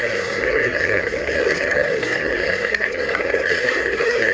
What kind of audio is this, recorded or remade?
remade